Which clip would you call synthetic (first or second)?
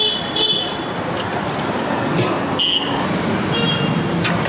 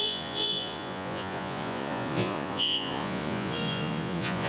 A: second